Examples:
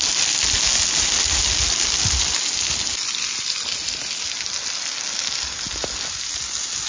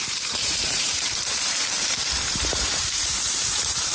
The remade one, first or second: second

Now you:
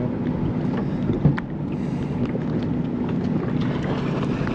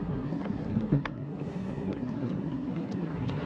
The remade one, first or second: second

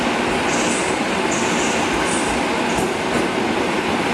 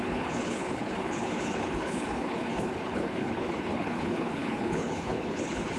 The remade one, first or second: second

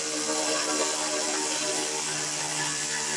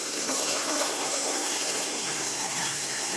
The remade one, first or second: second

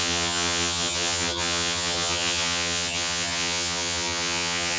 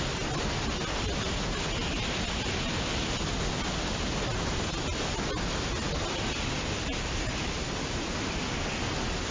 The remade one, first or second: first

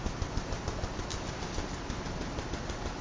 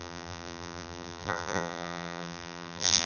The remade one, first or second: second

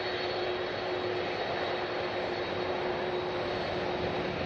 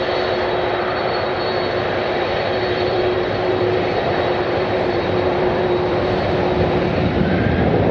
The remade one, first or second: second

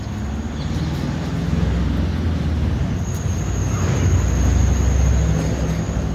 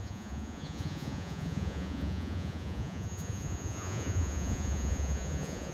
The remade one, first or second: second